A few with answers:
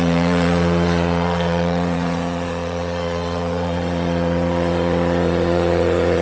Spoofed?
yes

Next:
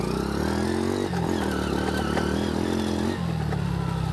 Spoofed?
no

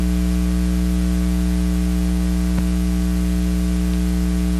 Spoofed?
no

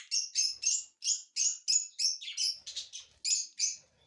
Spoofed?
no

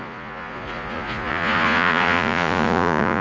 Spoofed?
yes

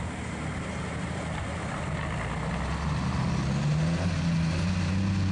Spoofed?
no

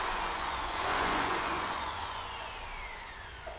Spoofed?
yes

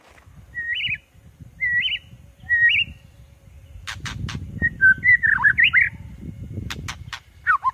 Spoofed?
no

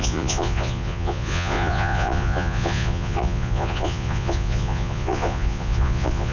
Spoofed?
yes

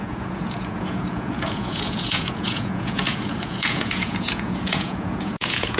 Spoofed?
yes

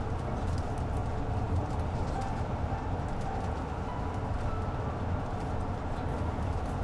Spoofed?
no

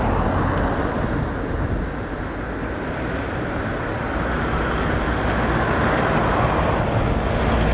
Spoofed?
no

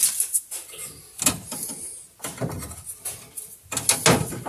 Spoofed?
no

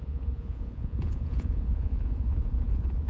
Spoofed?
yes